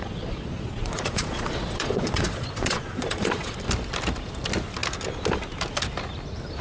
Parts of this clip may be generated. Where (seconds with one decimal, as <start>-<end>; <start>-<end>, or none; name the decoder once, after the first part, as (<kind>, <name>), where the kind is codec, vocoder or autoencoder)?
0.0-3.6 (vocoder, Vocos)